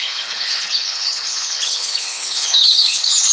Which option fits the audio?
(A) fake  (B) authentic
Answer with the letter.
A